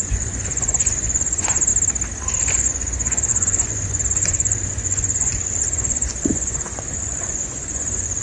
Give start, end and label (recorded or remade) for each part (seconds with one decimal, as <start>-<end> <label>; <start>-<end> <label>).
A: 0.0-1.7 remade; 1.7-2.4 recorded; 2.4-8.2 remade